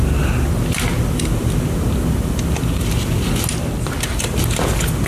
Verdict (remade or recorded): recorded